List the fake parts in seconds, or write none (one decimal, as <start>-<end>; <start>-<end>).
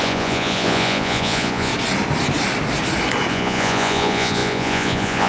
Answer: 0.0-1.7; 3.3-5.3